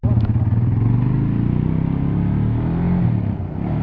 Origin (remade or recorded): recorded